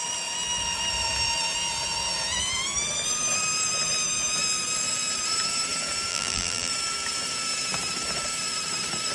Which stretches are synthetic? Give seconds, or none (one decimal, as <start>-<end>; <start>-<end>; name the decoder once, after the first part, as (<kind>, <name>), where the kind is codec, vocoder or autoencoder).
6.1-6.7 (vocoder, BigVGAN v2)